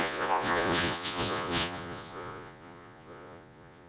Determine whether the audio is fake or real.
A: fake